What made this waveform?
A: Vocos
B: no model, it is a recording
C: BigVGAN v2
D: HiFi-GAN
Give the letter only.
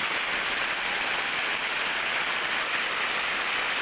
B